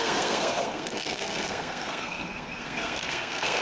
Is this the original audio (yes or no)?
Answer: no